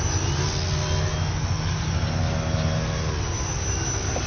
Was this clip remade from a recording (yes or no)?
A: no